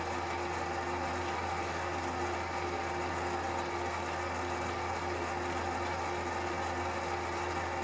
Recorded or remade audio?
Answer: recorded